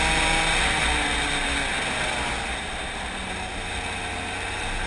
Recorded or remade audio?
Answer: recorded